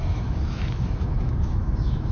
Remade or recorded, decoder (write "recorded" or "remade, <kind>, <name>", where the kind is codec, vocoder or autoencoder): remade, autoencoder, DAC-VAE